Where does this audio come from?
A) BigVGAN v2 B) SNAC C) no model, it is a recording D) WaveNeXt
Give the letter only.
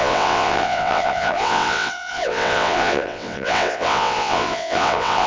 D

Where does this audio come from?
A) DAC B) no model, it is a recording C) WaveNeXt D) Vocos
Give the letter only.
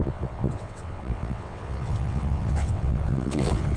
C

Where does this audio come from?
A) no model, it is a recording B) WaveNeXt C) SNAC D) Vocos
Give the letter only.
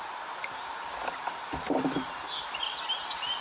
A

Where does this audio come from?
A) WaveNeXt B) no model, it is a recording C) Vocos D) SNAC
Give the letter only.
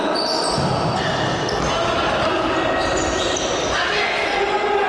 B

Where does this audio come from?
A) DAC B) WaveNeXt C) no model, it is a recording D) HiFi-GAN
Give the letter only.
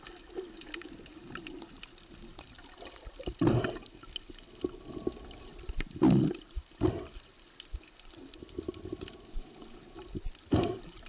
C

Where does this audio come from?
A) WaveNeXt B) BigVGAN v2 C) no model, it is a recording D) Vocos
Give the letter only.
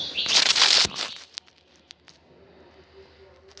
C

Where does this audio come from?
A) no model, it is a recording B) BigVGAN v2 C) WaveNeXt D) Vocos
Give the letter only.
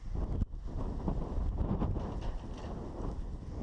A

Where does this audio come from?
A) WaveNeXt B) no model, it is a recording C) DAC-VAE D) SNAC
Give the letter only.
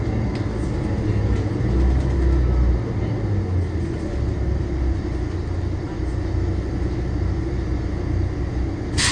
B